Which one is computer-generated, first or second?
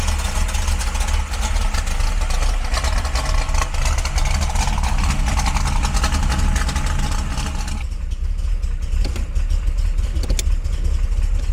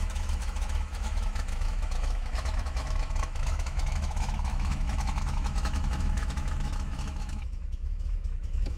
second